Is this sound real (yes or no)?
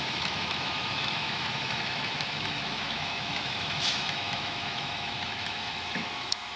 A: no